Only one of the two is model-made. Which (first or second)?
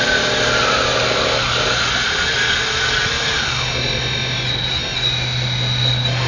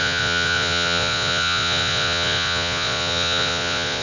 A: second